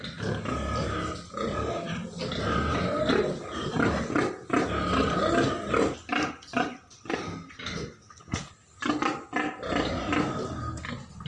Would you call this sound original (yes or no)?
yes